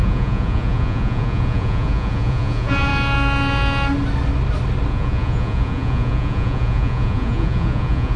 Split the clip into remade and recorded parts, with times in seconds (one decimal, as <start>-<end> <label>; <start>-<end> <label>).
0.0-2.9 remade; 2.9-4.9 recorded; 4.9-8.2 remade